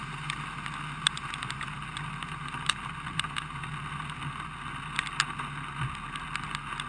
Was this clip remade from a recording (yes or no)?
no